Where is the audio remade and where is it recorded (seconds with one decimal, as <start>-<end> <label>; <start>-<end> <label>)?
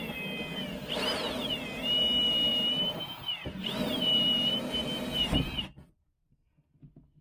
0.0-7.2 recorded